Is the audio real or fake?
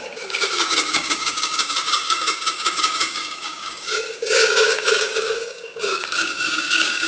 fake